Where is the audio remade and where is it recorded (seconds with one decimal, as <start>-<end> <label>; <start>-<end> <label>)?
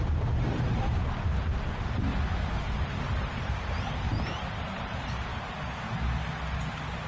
0.0-1.0 remade; 1.0-1.6 recorded; 1.6-2.1 remade; 2.1-4.8 recorded; 4.8-5.3 remade; 5.3-6.5 recorded; 6.5-7.1 remade